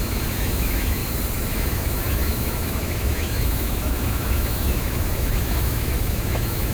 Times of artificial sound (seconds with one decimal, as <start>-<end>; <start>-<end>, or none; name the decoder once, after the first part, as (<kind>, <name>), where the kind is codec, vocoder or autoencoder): 0.0-1.0 (autoencoder, DAC-VAE); 1.5-6.7